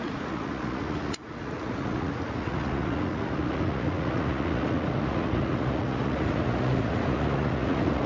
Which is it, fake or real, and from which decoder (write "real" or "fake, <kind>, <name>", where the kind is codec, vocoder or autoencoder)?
fake, vocoder, Vocos